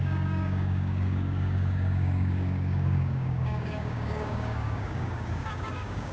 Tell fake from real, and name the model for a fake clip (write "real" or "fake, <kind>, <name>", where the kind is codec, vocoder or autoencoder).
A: fake, codec, DAC